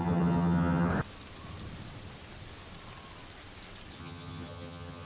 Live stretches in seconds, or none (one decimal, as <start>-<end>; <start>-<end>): 0.9-4.0